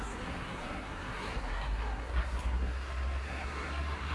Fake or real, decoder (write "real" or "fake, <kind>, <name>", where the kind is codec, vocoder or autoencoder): fake, codec, SNAC